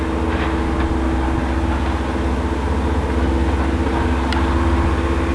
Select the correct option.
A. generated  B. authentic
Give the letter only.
B